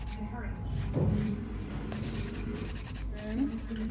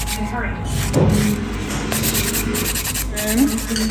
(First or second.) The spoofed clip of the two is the first